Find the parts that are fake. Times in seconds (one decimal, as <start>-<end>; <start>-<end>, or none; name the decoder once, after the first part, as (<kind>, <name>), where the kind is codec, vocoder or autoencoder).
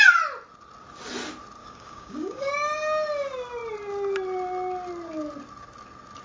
1.6-2.5 (codec, DAC)